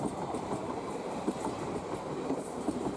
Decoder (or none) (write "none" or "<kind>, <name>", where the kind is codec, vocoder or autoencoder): vocoder, BigVGAN v2